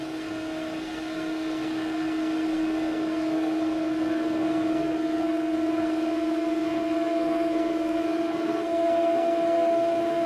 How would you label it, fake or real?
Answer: fake